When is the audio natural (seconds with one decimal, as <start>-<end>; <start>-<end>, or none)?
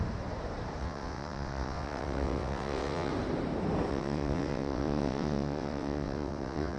0.0-0.8; 3.1-3.9